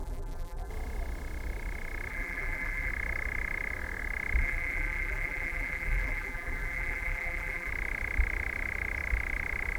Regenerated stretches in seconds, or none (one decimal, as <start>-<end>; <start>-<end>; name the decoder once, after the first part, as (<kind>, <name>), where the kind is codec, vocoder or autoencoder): 0.0-0.7 (vocoder, BigVGAN v2); 2.1-2.9; 4.4-7.7